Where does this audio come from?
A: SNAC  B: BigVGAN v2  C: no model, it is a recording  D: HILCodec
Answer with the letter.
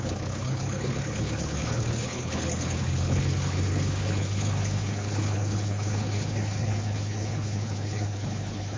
D